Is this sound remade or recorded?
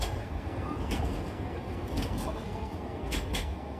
remade